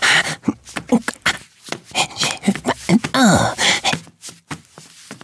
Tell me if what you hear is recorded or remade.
recorded